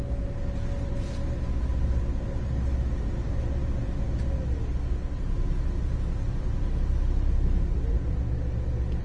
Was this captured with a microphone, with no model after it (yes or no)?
yes